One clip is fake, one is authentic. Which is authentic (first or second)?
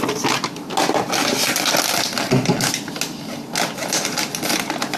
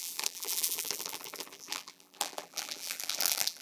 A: first